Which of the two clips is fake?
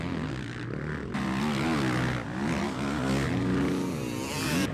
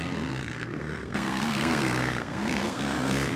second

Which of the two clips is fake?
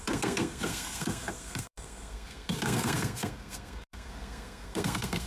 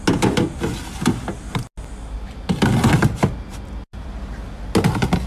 first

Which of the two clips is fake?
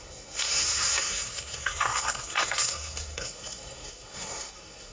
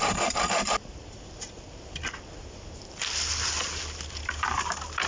first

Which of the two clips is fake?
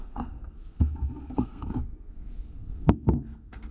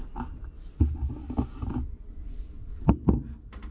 first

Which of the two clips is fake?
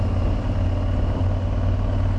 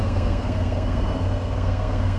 second